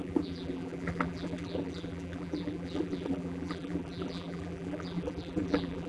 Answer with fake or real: fake